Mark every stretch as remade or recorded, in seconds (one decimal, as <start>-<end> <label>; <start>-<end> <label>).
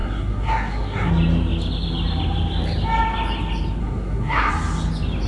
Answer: 0.0-1.1 remade; 1.1-3.8 recorded; 3.8-4.5 remade; 4.5-5.3 recorded